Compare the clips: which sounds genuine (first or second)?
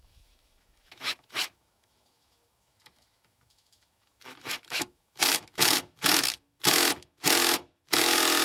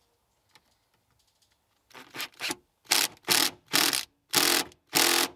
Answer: second